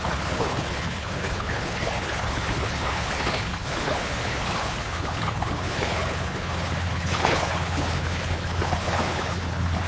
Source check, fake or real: fake